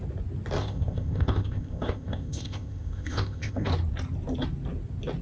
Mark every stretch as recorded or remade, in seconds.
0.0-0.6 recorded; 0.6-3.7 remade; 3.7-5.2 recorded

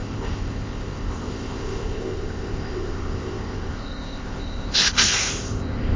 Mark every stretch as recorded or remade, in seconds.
0.0-6.0 remade

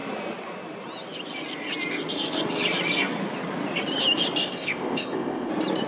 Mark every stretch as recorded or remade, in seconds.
0.0-4.4 recorded; 4.4-5.5 remade; 5.5-5.9 recorded

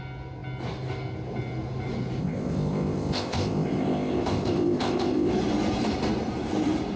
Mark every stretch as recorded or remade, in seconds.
0.0-2.2 recorded; 2.2-5.3 remade; 5.3-7.0 recorded

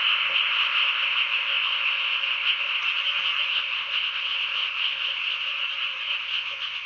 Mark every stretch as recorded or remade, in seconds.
0.0-2.8 remade; 2.8-3.5 recorded; 3.5-5.5 remade; 5.5-6.2 recorded; 6.2-6.9 remade

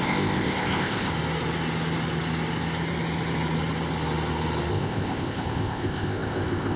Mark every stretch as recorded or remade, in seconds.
0.0-1.1 remade; 1.1-4.7 recorded; 4.7-6.8 remade

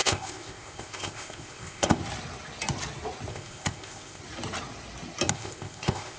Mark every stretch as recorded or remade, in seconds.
0.0-2.0 remade; 2.0-3.3 recorded; 3.3-4.2 remade; 4.2-5.3 recorded; 5.3-6.2 remade

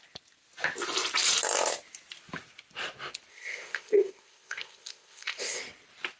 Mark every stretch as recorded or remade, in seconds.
0.0-3.3 recorded; 3.3-5.6 remade; 5.6-6.2 recorded